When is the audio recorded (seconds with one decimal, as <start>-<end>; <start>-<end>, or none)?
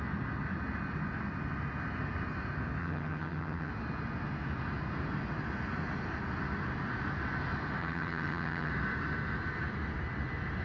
0.0-2.8; 3.7-7.8; 8.7-10.6